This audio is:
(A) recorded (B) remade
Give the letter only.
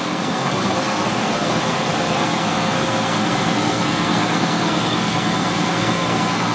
B